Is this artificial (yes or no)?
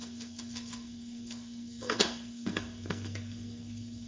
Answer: yes